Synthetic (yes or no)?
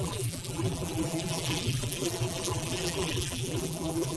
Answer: yes